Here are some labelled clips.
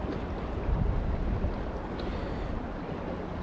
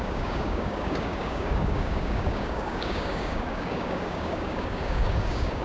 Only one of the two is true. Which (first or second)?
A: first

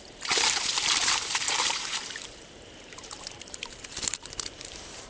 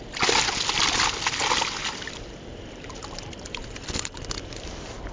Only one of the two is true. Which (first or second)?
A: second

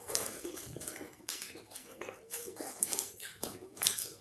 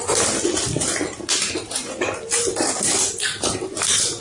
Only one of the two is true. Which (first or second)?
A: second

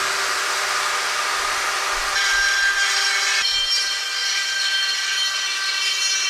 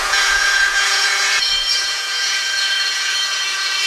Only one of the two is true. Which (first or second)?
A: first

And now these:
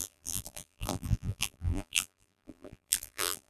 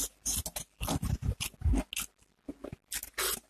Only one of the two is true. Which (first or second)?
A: second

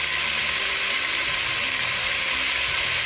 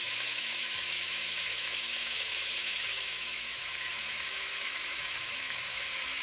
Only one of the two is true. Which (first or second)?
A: first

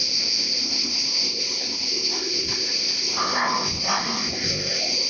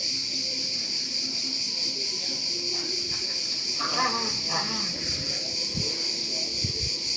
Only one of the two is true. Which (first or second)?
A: second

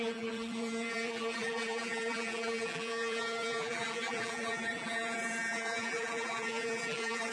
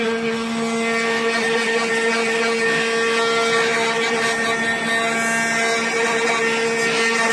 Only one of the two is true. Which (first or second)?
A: second